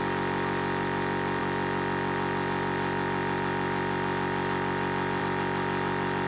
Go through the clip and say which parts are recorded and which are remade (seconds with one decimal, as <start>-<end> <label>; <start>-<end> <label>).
0.0-6.3 recorded